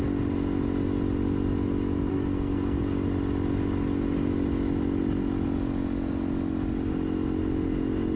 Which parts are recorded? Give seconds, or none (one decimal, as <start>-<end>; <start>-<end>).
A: 0.0-2.1; 2.8-8.2